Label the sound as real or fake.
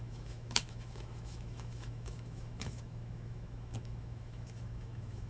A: fake